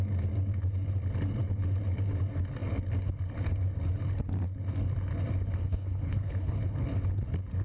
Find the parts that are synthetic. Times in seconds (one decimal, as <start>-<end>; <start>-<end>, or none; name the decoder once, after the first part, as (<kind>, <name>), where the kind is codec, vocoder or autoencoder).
5.6-6.6 (codec, HILCodec)